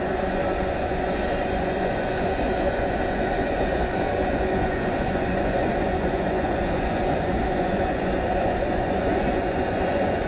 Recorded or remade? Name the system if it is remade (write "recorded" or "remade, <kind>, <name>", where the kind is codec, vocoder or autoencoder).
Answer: remade, vocoder, Vocos